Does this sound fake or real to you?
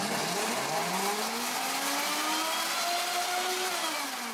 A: real